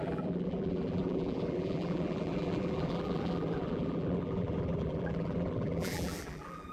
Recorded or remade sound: remade